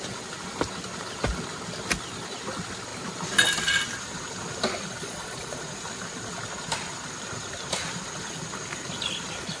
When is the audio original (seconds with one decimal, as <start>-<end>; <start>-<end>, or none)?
0.0-5.0; 5.6-9.6